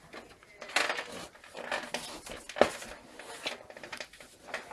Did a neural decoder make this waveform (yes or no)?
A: no